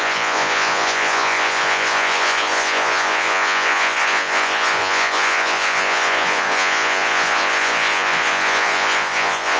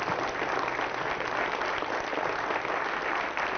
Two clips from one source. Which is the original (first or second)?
second